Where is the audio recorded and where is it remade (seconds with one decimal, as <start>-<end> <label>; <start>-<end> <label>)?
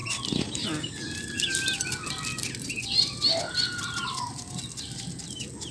0.0-5.7 recorded